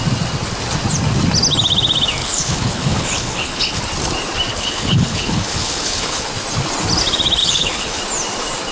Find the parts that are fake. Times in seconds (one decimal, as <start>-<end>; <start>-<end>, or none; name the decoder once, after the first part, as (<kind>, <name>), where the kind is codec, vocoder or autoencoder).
2.2-3.8 (codec, HILCodec); 4.5-6.3; 7.4-8.0